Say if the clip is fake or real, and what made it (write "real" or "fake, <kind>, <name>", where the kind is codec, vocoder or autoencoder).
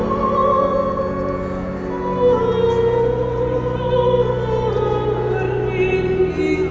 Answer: real